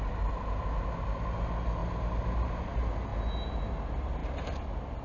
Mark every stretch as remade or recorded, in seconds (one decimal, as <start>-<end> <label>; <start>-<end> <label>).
0.0-5.0 recorded